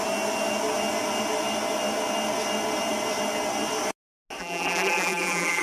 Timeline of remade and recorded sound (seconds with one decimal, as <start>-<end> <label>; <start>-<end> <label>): 0.0-4.4 recorded; 4.4-5.6 remade